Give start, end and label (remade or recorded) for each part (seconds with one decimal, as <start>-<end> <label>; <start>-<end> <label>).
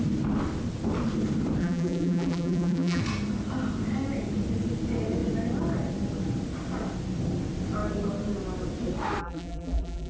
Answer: 0.0-1.6 recorded; 1.6-3.0 remade; 3.0-9.2 recorded; 9.2-10.1 remade